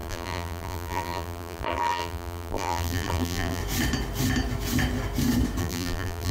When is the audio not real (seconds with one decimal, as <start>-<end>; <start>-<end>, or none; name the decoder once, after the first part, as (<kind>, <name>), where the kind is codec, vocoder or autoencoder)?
0.0-3.6 (vocoder, BigVGAN v2); 5.6-6.3